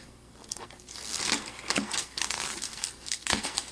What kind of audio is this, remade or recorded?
remade